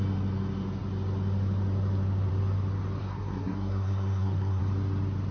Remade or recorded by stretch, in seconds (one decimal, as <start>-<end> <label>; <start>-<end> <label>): 0.0-3.0 recorded; 3.0-4.6 remade; 4.6-5.3 recorded